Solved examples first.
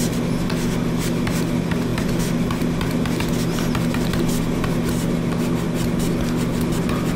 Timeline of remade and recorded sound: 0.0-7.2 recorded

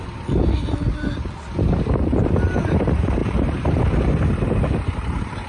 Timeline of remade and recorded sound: 0.0-3.2 recorded; 3.2-3.8 remade; 3.8-5.5 recorded

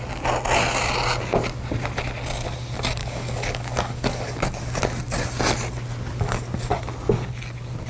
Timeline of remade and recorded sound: 0.0-3.0 recorded; 3.0-4.8 remade; 4.8-7.9 recorded

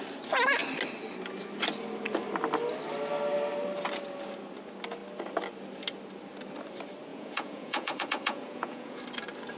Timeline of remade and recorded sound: 0.0-7.1 recorded; 7.1-9.0 remade; 9.0-9.6 recorded

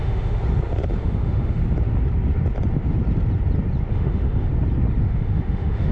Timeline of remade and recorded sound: 0.0-0.4 remade; 0.4-1.0 recorded; 1.0-1.6 remade; 1.6-3.9 recorded; 3.9-4.5 remade; 4.5-5.0 recorded; 5.0-5.9 remade